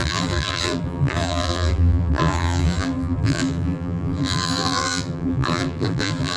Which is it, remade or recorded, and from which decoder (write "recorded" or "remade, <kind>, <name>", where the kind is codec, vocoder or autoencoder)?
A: remade, vocoder, BigVGAN v2